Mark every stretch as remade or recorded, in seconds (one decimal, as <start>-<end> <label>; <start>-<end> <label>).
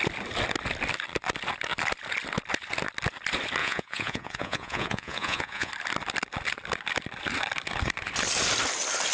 0.0-3.6 recorded; 3.6-5.7 remade; 5.7-9.1 recorded